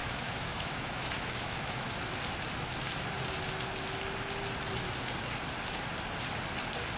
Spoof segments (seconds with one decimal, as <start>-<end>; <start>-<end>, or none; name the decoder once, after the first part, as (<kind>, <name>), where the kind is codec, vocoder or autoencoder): 0.0-2.0 (autoencoder, DAC-VAE)